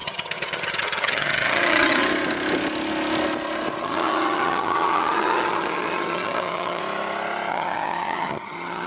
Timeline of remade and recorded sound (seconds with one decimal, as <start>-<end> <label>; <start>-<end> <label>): 0.0-2.0 remade; 2.0-3.8 recorded; 3.8-6.8 remade; 6.8-7.5 recorded; 7.5-8.9 remade